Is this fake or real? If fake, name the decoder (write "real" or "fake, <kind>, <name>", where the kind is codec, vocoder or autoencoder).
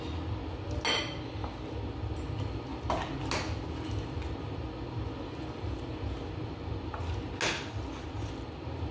real